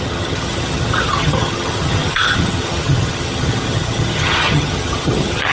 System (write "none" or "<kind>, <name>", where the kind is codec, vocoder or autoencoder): vocoder, HiFi-GAN